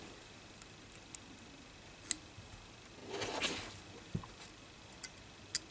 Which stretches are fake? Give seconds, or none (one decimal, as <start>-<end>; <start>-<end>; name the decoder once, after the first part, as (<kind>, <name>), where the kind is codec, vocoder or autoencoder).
none